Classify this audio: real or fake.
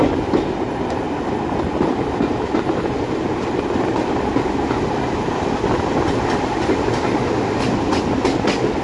real